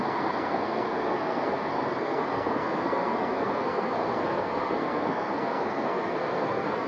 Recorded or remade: remade